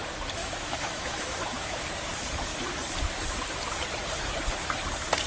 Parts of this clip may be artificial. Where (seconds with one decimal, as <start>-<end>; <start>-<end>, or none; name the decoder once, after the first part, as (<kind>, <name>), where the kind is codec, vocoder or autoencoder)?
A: 0.4-1.8 (autoencoder, DAC-VAE)